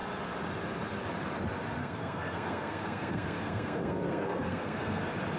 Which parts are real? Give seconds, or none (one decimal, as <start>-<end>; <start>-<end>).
0.0-1.8; 5.0-5.4